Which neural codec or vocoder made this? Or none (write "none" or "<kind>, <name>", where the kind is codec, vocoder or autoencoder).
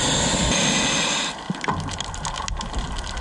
none